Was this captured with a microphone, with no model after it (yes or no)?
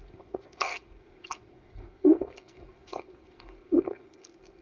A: no